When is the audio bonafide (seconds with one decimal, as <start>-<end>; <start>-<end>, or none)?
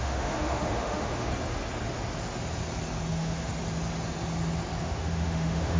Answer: 1.3-3.1; 3.5-4.8